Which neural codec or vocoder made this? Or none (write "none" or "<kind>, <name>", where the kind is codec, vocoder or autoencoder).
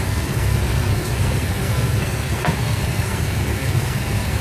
codec, SNAC